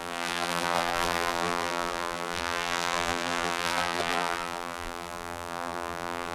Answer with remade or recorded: remade